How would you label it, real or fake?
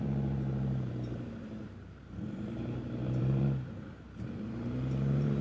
fake